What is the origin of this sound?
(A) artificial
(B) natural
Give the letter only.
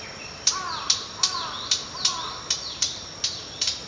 B